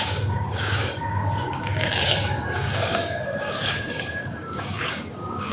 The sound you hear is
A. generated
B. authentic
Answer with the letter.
A